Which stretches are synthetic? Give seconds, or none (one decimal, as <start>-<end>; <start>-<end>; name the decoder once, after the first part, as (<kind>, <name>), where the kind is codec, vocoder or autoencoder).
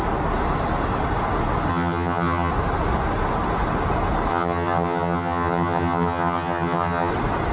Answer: 1.7-2.5 (vocoder, HiFi-GAN); 4.3-7.1